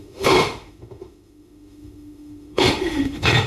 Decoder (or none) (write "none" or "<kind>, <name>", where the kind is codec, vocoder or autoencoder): autoencoder, DAC-VAE